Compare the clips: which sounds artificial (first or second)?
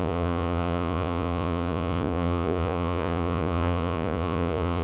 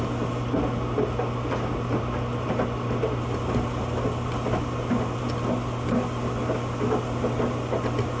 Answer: first